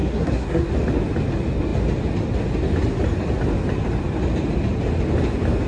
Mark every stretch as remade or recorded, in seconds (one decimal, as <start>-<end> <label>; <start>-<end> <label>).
0.0-0.7 remade; 0.7-5.7 recorded